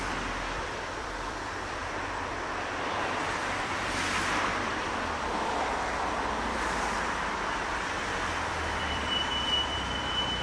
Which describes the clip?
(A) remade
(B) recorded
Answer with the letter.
A